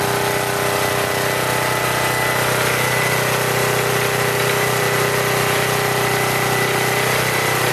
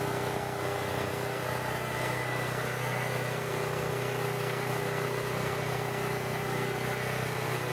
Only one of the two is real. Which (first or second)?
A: first